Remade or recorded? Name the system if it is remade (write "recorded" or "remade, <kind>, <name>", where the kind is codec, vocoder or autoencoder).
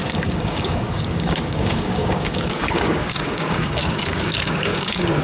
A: remade, codec, DAC